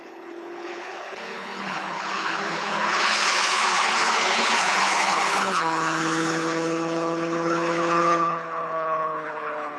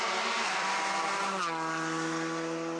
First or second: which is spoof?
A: first